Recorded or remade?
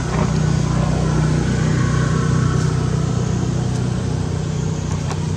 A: recorded